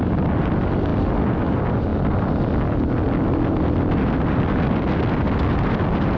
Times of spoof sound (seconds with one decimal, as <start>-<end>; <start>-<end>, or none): none

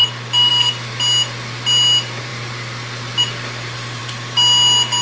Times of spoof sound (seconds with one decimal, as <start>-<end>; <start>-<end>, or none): none